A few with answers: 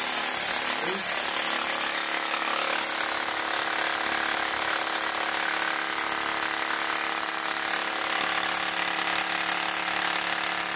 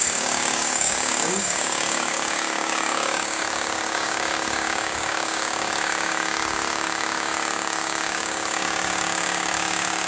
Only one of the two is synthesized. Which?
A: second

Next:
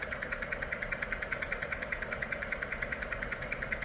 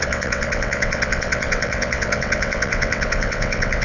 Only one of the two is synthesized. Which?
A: second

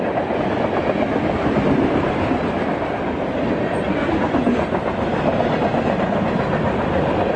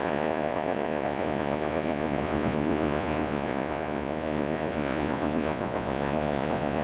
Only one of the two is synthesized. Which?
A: second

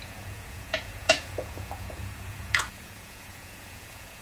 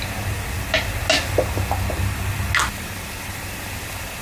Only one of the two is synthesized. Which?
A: first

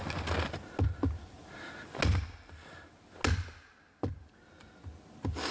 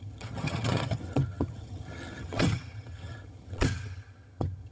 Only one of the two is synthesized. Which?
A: second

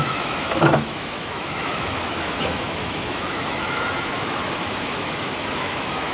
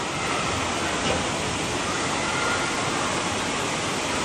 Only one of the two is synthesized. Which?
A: first